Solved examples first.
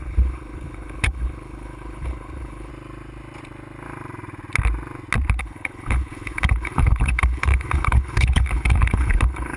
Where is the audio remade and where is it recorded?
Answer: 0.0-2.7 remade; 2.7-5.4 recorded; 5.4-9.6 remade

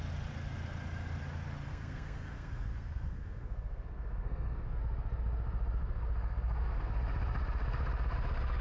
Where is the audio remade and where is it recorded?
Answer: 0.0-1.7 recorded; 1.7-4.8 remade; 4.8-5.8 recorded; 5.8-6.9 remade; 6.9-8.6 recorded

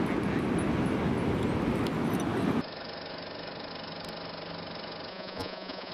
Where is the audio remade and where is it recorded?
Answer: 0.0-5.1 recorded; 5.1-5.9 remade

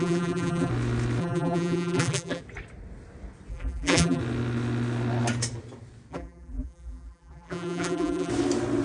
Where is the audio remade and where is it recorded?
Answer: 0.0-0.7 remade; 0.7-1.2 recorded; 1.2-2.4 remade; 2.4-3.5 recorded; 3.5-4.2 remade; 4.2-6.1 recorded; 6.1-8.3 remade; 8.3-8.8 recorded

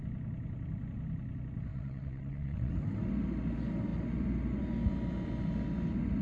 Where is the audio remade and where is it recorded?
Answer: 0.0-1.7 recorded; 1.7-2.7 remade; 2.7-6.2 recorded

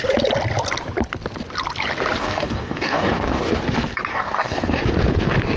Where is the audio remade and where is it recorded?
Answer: 0.0-2.2 recorded; 2.2-3.6 remade; 3.6-4.1 recorded; 4.1-4.8 remade; 4.8-5.6 recorded